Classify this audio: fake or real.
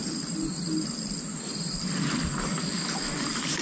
real